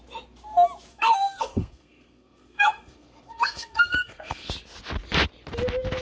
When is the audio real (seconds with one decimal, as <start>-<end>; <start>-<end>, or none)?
0.0-0.9; 4.5-6.0